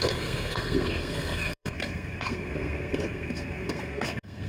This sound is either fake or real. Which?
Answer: fake